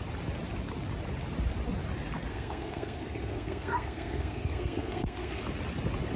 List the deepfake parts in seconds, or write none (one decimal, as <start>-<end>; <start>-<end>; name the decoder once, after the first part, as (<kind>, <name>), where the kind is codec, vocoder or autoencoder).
2.3-5.4 (codec, SNAC)